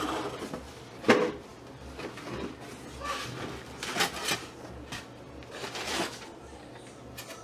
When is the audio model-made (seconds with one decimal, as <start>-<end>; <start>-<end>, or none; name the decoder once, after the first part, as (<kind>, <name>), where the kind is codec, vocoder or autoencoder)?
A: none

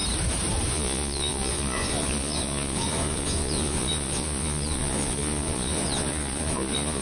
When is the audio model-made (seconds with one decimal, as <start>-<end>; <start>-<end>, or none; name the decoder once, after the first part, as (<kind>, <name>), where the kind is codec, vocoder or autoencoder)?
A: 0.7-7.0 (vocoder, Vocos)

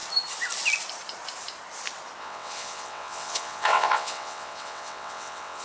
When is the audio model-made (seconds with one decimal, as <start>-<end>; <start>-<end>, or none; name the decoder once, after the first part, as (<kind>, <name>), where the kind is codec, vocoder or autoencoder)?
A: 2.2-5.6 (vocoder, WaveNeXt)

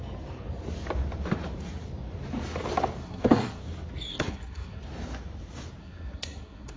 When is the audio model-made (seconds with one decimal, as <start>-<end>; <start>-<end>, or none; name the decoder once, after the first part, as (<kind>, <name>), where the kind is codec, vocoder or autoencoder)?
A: 3.0-3.6 (codec, SNAC); 4.1-4.8; 5.8-6.8